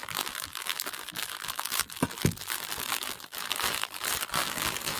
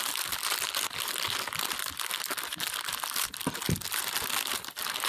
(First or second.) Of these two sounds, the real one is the second